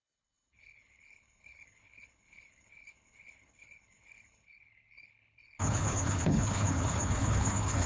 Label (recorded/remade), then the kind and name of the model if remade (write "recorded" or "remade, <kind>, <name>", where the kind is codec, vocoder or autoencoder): remade, codec, HILCodec